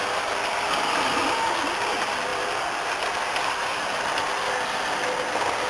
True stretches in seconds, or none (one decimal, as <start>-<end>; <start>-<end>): 0.0-5.7